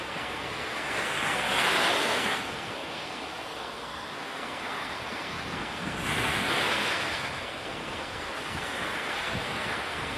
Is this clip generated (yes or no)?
yes